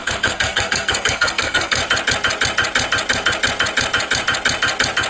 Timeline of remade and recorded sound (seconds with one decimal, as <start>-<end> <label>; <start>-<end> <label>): 0.0-1.8 remade; 1.8-5.1 recorded